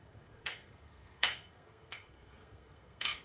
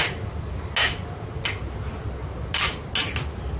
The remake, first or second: first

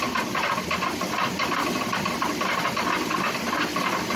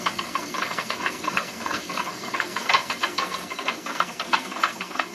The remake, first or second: second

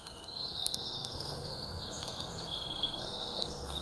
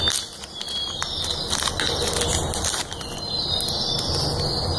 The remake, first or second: first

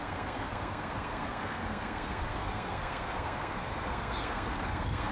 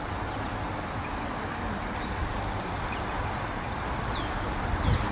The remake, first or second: first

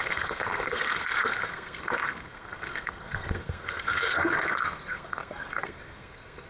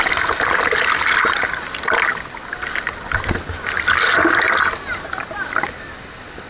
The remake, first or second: first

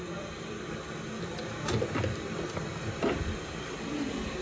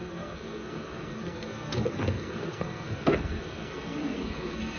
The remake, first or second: second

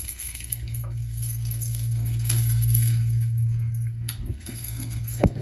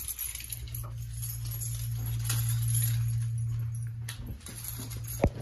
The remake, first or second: first